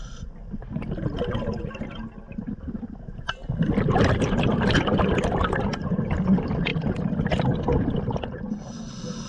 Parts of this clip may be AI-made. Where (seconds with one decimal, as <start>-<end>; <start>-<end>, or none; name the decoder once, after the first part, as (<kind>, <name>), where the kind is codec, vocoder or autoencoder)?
3.4-5.4 (vocoder, BigVGAN v2); 6.7-7.3